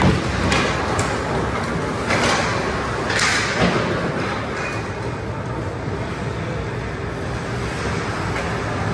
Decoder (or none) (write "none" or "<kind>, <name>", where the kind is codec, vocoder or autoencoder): none